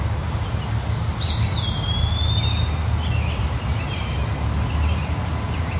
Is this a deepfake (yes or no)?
no